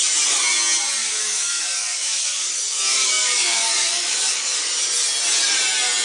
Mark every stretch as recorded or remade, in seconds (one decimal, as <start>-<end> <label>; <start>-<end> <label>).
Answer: 0.0-1.0 recorded; 1.0-4.6 remade; 4.6-6.0 recorded